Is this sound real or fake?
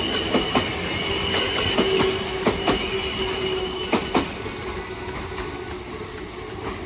real